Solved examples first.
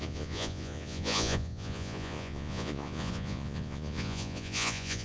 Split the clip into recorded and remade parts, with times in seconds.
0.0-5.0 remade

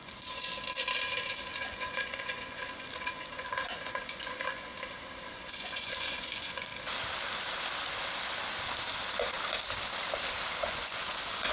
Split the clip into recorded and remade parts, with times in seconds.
0.0-0.5 remade; 0.5-1.5 recorded; 1.5-4.7 remade; 4.7-5.3 recorded; 5.3-6.7 remade; 6.7-10.6 recorded; 10.6-11.5 remade

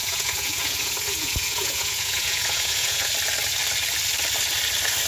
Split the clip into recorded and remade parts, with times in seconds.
0.0-3.1 remade; 3.1-5.1 recorded

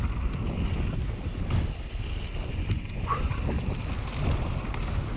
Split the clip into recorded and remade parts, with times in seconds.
0.0-2.5 recorded; 2.5-3.3 remade; 3.3-5.2 recorded